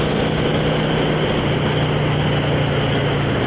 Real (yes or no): yes